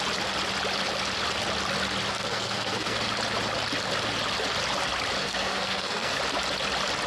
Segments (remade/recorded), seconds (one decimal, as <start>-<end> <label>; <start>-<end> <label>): 0.0-2.1 recorded; 2.1-3.0 remade; 3.0-5.2 recorded; 5.2-6.2 remade; 6.2-7.1 recorded